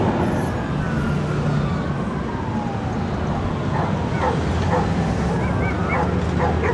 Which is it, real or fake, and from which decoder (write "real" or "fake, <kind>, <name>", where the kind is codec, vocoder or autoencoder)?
real